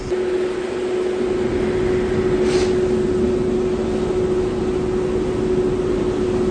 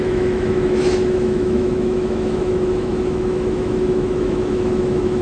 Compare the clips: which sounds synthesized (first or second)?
second